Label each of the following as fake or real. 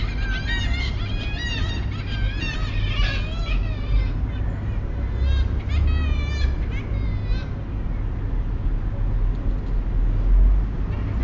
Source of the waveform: real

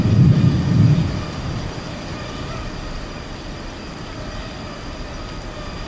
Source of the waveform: fake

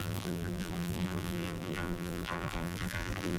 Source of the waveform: fake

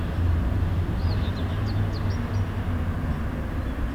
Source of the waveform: real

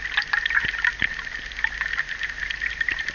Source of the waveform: fake